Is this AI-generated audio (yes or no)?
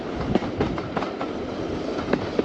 no